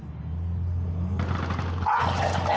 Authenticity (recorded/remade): recorded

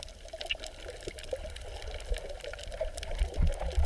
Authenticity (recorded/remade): recorded